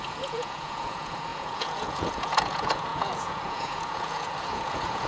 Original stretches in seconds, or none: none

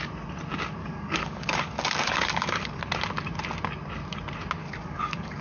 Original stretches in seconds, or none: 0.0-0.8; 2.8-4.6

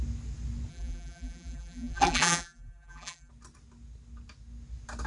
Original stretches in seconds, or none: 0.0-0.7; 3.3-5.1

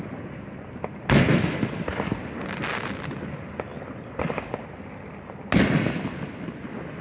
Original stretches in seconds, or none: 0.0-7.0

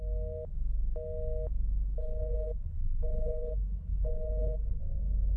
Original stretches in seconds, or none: 0.0-2.0; 4.8-5.4

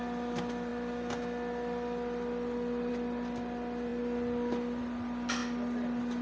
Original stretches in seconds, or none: 0.0-6.2

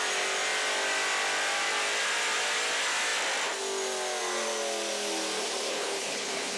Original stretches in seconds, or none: 0.0-5.7